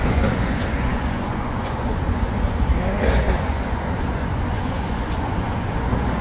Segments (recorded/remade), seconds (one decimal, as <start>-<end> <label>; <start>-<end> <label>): 0.0-6.2 remade